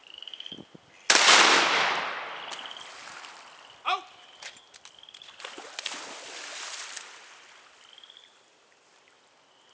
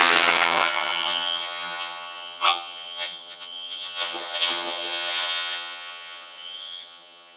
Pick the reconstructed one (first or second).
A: second